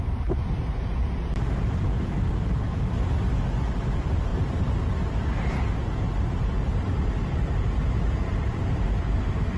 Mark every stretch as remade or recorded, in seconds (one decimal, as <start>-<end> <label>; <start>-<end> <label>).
0.0-8.3 recorded; 8.3-9.2 remade; 9.2-9.6 recorded

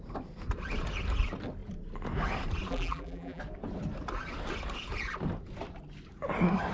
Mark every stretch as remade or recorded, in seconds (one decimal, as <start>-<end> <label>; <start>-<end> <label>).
0.0-2.7 recorded; 2.7-3.4 remade; 3.4-6.7 recorded

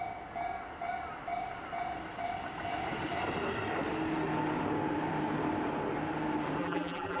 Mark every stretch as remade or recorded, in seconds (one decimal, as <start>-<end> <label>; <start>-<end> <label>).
0.0-6.6 recorded; 6.6-7.2 remade

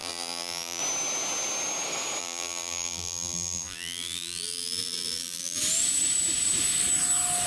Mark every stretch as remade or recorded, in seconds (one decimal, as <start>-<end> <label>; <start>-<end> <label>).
0.0-0.8 remade; 0.8-2.2 recorded; 2.2-5.6 remade; 5.6-7.5 recorded